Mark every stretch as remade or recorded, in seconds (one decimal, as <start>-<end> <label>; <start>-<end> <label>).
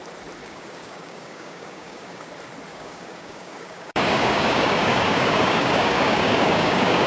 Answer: 0.0-0.4 recorded; 0.4-2.3 remade; 2.3-2.7 recorded; 2.7-7.1 remade